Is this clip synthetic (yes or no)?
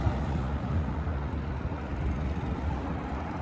yes